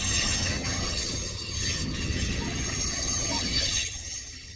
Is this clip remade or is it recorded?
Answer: remade